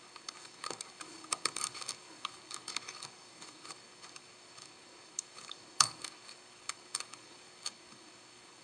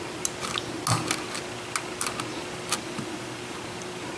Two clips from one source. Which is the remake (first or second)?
first